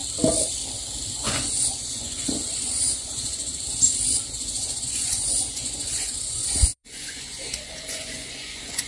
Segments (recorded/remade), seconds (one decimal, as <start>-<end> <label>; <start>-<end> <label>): 0.0-1.1 recorded; 1.1-3.5 remade; 3.5-4.4 recorded; 4.4-8.9 remade